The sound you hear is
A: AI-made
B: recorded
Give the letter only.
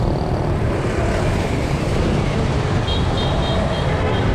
A